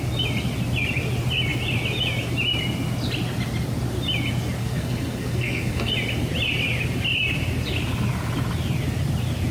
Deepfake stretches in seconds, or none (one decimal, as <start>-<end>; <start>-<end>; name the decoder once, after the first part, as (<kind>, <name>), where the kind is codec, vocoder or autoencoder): 4.6-5.9 (codec, SNAC)